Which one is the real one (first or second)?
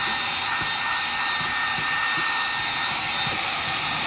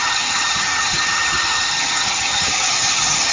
first